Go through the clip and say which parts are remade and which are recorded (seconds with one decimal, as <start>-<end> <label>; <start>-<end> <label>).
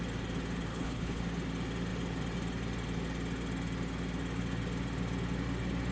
0.0-0.7 recorded; 0.7-1.2 remade; 1.2-5.9 recorded